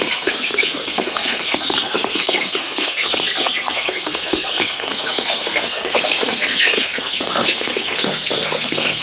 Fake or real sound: fake